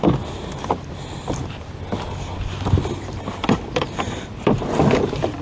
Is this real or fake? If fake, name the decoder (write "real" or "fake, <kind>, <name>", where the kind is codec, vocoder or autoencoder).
real